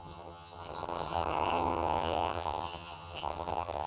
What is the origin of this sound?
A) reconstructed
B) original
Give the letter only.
A